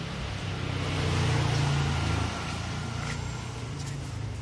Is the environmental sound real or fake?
real